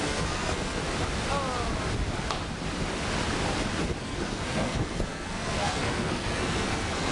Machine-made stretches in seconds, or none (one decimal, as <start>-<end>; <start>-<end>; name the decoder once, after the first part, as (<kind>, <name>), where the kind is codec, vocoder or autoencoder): 0.0-0.8 (codec, SNAC); 4.0-7.1